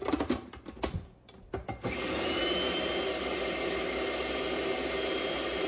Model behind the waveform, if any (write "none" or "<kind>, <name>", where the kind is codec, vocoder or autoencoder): none